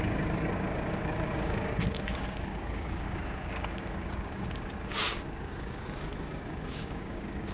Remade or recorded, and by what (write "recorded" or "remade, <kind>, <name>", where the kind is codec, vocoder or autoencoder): remade, codec, DAC